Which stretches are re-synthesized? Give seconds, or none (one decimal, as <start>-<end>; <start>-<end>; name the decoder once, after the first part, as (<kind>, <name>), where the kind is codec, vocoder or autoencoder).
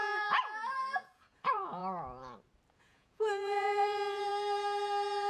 0.0-1.8 (vocoder, Vocos); 2.7-4.3